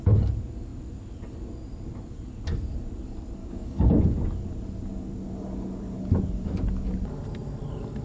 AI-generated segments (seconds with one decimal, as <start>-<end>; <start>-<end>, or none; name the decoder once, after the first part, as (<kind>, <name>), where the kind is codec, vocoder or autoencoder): 3.4-4.0 (codec, DAC)